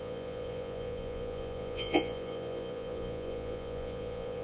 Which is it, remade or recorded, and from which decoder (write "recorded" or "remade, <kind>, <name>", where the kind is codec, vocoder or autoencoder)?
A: remade, vocoder, Vocos